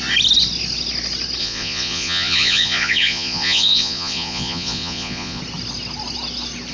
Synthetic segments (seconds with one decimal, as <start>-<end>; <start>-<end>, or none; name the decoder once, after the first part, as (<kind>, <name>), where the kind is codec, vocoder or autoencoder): 1.4-5.4 (vocoder, Vocos)